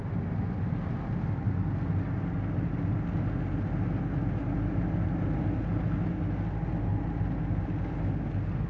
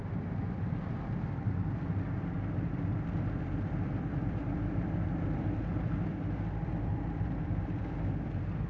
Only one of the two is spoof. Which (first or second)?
second